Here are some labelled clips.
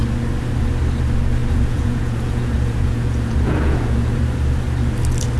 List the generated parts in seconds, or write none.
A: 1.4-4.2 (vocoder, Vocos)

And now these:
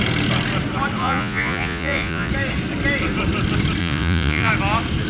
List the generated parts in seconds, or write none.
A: 1.0-2.3 (vocoder, Vocos); 3.8-4.5

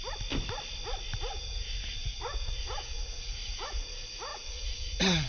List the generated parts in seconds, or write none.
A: 1.3-3.9 (vocoder, Vocos); 4.3-5.3

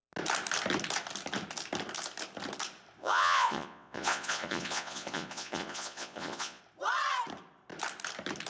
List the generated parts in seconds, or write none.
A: 3.0-6.6 (vocoder, Vocos)